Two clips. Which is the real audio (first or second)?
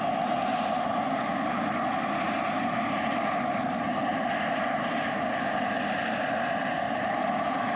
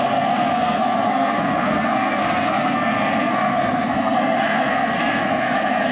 first